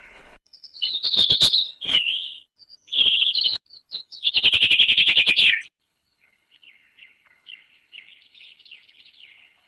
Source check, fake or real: fake